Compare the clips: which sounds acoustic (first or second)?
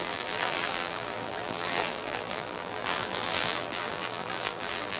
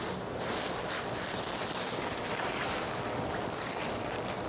second